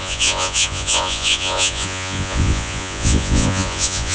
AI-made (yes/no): yes